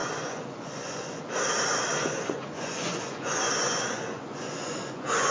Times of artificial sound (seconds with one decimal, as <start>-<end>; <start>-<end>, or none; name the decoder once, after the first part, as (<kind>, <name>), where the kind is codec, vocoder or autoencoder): 0.0-1.2 (vocoder, Vocos); 1.9-5.3